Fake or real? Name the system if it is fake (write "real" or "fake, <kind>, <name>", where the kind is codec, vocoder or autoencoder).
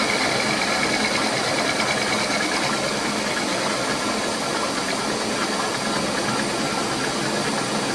real